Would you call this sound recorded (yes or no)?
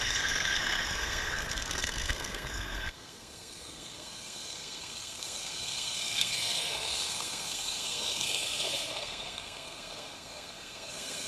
no